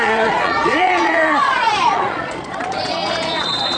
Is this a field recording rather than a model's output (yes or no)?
no